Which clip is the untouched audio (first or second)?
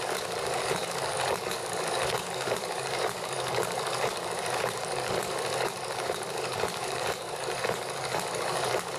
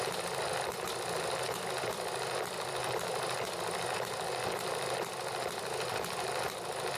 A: second